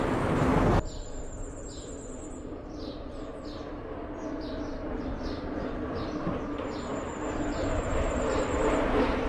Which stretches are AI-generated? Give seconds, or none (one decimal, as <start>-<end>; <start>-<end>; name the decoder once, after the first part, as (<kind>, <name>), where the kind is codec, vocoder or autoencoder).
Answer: 0.0-0.5 (vocoder, BigVGAN v2); 4.6-9.3